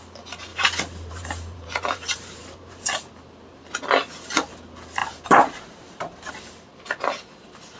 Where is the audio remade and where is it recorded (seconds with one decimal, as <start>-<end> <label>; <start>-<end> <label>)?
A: 0.0-0.5 recorded; 0.5-3.0 remade; 3.0-5.0 recorded; 5.0-6.3 remade; 6.3-7.8 recorded